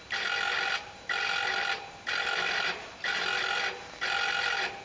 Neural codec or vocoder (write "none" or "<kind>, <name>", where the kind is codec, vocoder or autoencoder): none